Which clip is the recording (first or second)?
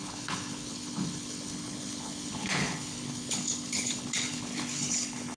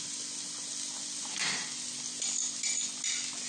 second